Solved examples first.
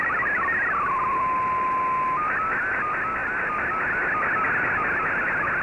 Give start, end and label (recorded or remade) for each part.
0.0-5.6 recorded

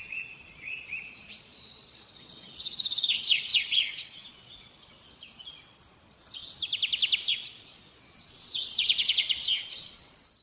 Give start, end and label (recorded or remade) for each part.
0.0-6.4 remade; 6.4-7.3 recorded; 7.3-10.4 remade

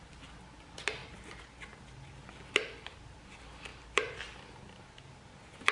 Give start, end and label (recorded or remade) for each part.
0.0-5.7 recorded

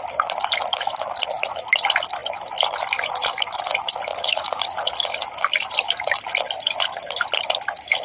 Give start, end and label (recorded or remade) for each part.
0.0-4.1 recorded; 4.1-4.9 remade; 4.9-8.0 recorded

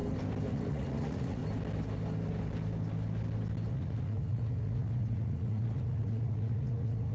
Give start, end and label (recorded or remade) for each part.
0.0-0.5 recorded; 0.5-1.4 remade; 1.4-3.7 recorded; 3.7-7.1 remade

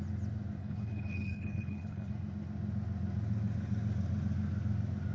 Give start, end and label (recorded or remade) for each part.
0.0-0.6 recorded; 0.6-2.1 remade; 2.1-5.1 recorded